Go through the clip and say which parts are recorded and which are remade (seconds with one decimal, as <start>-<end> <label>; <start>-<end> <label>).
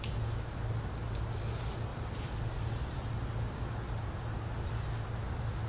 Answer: 0.0-5.7 recorded